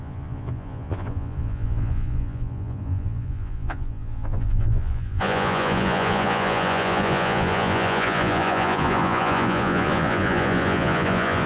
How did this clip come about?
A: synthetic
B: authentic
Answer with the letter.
A